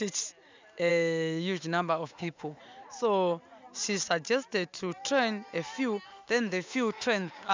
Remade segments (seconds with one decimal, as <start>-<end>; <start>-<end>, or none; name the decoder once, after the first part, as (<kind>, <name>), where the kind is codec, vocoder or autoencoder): 0.9-2.6 (autoencoder, DAC-VAE); 6.1-7.5